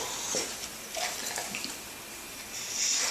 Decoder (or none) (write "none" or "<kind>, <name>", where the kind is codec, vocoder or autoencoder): none